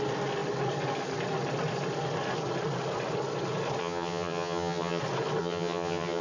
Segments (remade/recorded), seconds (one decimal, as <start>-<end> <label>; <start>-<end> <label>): 0.0-3.8 recorded; 3.8-5.0 remade; 5.0-5.4 recorded; 5.4-6.2 remade